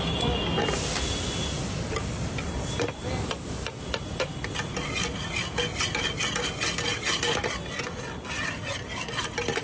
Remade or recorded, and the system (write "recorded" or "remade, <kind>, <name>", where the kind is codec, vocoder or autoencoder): recorded